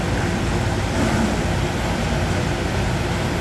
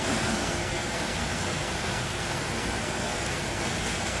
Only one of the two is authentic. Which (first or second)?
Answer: first